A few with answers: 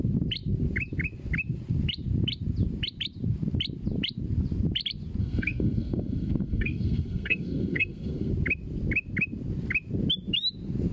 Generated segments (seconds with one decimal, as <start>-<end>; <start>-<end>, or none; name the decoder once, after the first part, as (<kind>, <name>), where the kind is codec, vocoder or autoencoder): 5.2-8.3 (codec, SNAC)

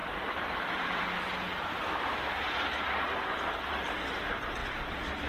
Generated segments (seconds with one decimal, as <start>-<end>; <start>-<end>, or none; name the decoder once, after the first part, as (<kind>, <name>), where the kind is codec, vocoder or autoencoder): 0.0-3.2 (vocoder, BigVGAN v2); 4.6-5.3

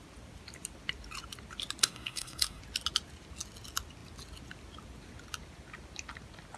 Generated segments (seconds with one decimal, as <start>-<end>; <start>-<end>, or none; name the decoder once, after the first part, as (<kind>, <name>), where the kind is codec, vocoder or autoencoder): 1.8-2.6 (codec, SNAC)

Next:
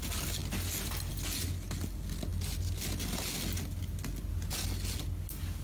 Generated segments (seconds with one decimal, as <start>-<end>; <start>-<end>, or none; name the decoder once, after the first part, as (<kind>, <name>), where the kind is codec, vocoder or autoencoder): none

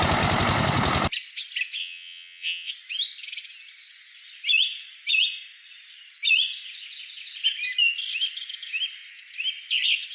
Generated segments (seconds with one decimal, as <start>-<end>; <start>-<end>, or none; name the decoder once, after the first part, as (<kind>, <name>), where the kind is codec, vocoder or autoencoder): 1.8-2.7 (vocoder, WaveNeXt)